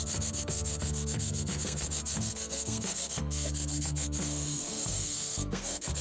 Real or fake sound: fake